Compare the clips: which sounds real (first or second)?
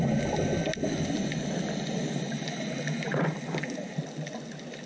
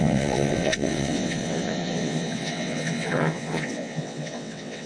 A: first